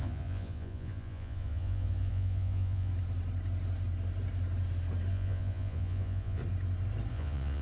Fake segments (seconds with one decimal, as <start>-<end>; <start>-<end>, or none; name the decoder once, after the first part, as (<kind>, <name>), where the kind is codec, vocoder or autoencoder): 0.0-2.9 (vocoder, Vocos); 5.1-6.4; 7.1-7.6